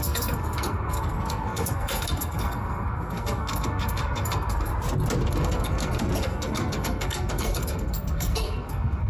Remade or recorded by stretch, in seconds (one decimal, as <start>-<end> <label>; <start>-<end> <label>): 0.0-4.7 remade; 4.7-5.3 recorded; 5.3-9.1 remade